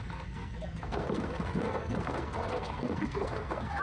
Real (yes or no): no